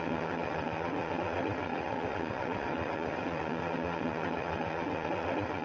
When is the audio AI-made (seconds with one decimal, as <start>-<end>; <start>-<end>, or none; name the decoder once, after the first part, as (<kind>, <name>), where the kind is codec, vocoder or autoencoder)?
0.0-5.6 (vocoder, WaveNeXt)